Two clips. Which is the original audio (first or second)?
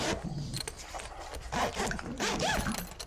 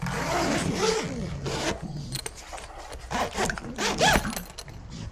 second